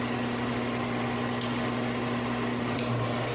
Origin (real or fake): real